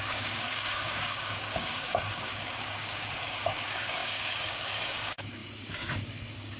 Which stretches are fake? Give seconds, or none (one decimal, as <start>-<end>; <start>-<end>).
0.0-6.6